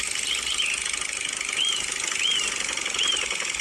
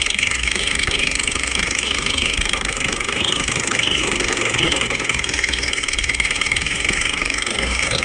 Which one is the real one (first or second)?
first